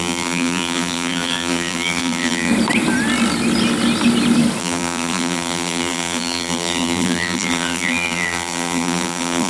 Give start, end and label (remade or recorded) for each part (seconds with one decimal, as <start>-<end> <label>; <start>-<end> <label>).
0.0-2.5 remade; 2.5-4.6 recorded; 4.6-9.5 remade